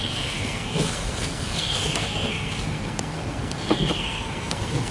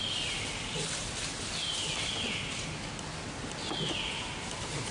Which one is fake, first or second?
first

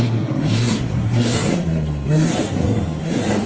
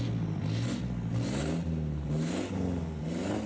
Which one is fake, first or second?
first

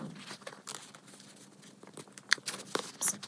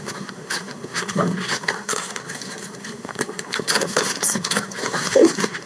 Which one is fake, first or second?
second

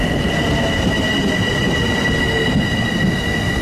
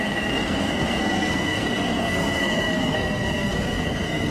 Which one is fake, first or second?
second